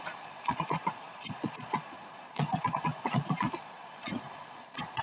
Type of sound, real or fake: fake